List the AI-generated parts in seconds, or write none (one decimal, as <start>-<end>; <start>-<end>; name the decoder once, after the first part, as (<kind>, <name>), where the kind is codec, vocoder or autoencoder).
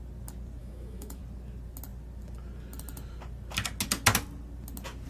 0.6-1.2 (autoencoder, DAC-VAE)